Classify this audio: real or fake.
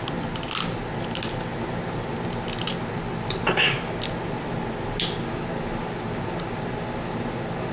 real